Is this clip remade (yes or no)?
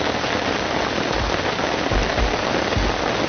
no